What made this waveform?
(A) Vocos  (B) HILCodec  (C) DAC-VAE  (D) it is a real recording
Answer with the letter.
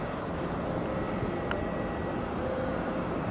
D